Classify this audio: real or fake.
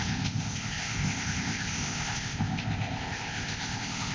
fake